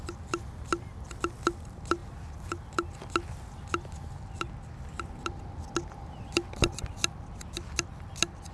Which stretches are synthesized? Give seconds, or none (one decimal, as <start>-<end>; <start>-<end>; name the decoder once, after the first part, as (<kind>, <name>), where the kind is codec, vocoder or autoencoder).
none